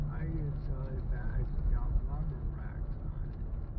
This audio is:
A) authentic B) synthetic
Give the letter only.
A